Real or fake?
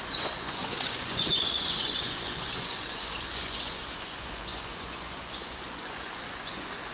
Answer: fake